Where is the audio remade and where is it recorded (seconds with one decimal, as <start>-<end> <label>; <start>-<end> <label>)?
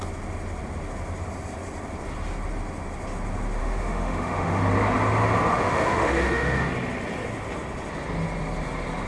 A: 0.0-3.6 recorded; 3.6-4.6 remade; 4.6-5.5 recorded; 5.5-6.7 remade; 6.7-9.1 recorded